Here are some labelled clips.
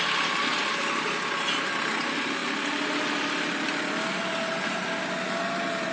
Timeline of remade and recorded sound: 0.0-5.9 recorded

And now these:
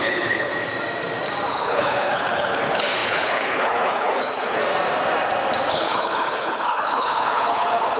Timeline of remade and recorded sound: 0.0-0.5 remade; 0.5-1.5 recorded; 1.5-4.6 remade; 4.6-5.7 recorded; 5.7-8.0 remade

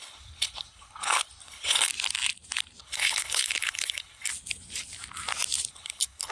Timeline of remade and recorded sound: 0.0-1.9 remade; 1.9-2.8 recorded; 2.8-4.3 remade; 4.3-5.7 recorded; 5.7-6.3 remade

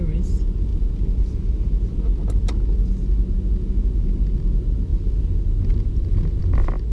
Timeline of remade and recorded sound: 0.0-6.9 recorded

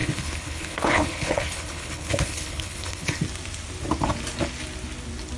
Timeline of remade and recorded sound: 0.0-3.2 remade; 3.2-5.4 recorded

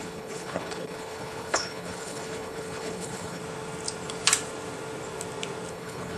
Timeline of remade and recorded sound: 0.0-3.4 remade; 3.4-5.7 recorded; 5.7-6.2 remade